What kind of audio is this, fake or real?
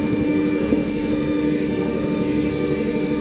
fake